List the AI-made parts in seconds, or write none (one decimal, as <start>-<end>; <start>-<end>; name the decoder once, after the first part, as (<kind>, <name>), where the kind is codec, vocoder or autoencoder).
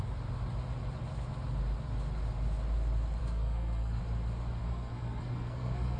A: 3.2-4.0 (codec, SNAC); 4.6-6.0